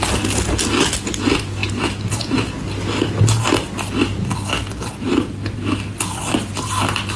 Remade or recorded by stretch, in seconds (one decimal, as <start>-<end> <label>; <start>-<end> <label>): 0.0-7.2 recorded